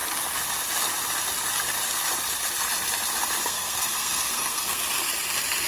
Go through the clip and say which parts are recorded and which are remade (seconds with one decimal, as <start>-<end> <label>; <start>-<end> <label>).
0.0-3.4 recorded; 3.4-4.8 remade; 4.8-5.7 recorded